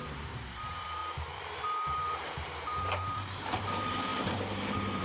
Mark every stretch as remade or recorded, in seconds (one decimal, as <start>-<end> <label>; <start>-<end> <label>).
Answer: 0.0-5.0 remade